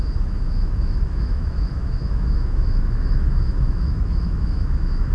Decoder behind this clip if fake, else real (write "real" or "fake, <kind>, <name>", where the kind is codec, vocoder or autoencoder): fake, autoencoder, DAC-VAE